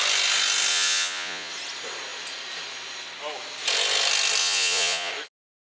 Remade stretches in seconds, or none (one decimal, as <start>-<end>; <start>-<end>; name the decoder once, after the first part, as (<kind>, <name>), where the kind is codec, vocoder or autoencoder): 0.7-1.5 (vocoder, Vocos); 4.4-5.1